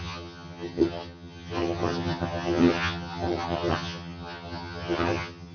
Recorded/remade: remade